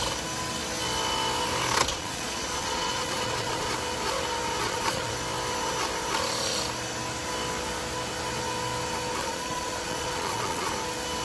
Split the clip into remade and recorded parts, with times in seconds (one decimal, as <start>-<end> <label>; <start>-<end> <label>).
0.0-1.9 recorded; 1.9-3.7 remade; 3.7-4.6 recorded; 4.6-5.1 remade; 5.1-9.2 recorded; 9.2-10.7 remade; 10.7-11.2 recorded